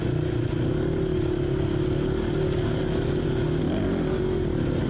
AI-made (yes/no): no